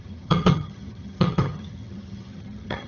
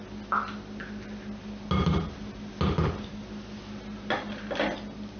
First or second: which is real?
second